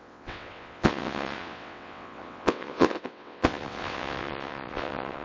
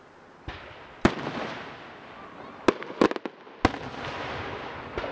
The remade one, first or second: first